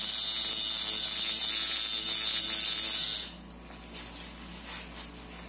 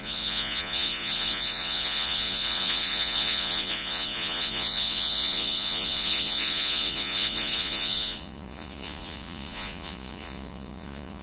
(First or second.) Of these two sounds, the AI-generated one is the second